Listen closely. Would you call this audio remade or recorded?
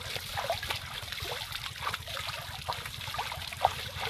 recorded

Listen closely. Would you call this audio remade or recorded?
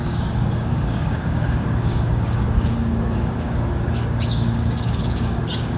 remade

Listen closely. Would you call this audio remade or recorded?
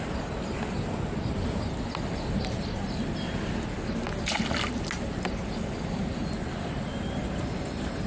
recorded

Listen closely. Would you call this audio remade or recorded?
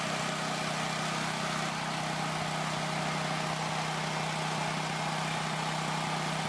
recorded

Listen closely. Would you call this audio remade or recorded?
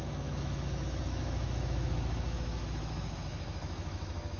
remade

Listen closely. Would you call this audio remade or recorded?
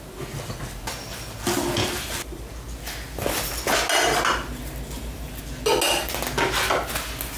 recorded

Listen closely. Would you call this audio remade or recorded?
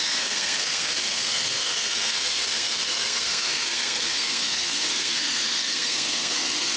remade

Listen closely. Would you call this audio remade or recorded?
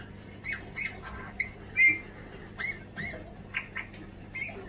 recorded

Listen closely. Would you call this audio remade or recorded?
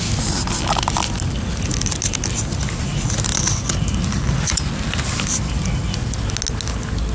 recorded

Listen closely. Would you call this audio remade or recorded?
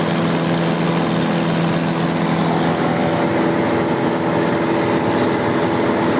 recorded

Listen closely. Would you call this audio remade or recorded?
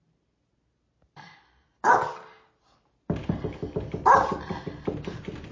recorded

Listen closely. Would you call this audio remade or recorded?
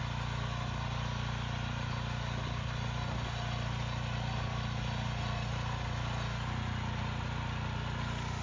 recorded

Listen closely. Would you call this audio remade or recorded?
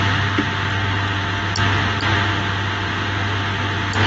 recorded